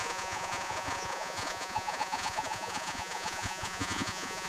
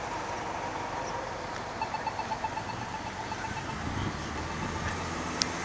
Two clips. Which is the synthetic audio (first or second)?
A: first